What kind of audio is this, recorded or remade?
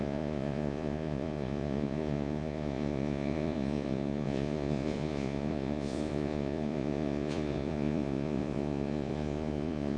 remade